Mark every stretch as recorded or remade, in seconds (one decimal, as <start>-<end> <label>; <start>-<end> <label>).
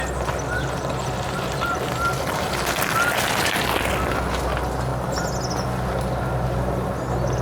0.0-7.4 recorded